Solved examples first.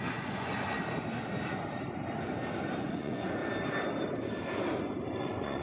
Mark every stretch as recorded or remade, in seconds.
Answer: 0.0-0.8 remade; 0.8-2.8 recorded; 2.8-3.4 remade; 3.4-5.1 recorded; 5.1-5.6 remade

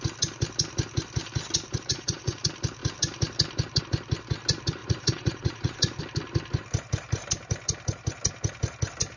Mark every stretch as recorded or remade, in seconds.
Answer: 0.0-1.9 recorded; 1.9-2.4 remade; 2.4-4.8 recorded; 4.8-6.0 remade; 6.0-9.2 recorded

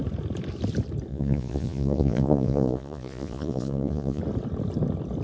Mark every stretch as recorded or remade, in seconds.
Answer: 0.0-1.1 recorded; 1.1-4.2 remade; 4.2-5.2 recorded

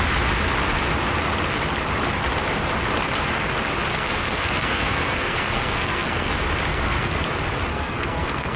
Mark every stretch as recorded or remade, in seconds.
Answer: 0.0-3.9 recorded; 3.9-6.3 remade; 6.3-6.7 recorded; 6.7-7.2 remade; 7.2-7.7 recorded; 7.7-8.6 remade

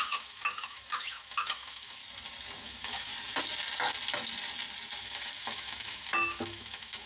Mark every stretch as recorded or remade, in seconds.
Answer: 0.0-2.0 remade; 2.0-2.6 recorded; 2.6-3.1 remade; 3.1-5.0 recorded; 5.0-7.1 remade

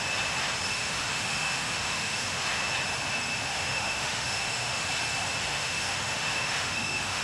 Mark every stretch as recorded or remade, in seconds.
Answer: 0.0-0.7 recorded; 0.7-2.4 remade; 2.4-3.5 recorded; 3.5-4.9 remade; 4.9-5.5 recorded; 5.5-7.2 remade